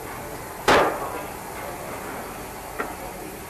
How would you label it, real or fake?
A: real